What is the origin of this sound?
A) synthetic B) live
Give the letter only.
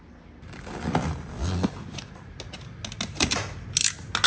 B